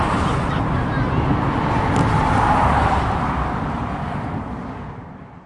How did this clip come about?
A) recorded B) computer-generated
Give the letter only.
A